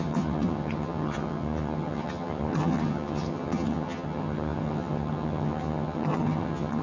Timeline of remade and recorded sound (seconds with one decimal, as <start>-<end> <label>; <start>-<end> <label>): 0.0-6.8 remade